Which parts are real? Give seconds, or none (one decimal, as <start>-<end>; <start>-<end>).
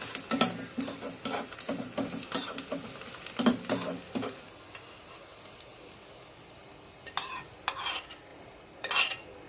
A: 0.0-9.5